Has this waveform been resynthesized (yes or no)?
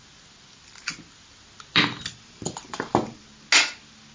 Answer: no